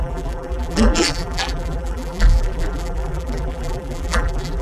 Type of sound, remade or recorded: remade